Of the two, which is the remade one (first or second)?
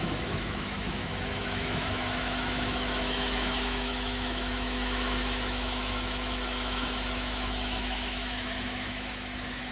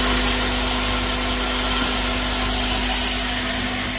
first